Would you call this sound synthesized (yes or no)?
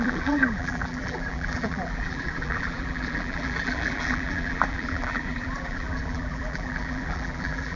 yes